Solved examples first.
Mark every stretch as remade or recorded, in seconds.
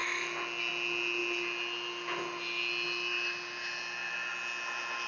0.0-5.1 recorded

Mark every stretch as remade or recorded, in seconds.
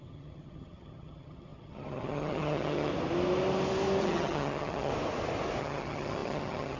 0.0-2.9 remade; 2.9-4.0 recorded; 4.0-4.9 remade; 4.9-5.6 recorded; 5.6-6.8 remade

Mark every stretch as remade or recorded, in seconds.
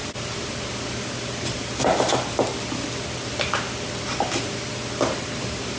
0.0-5.8 recorded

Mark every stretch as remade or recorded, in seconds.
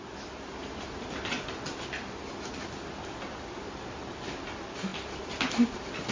0.0-6.1 recorded